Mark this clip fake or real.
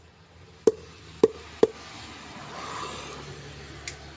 real